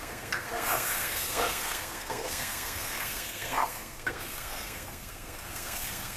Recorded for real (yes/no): no